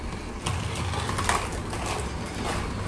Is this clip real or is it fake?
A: real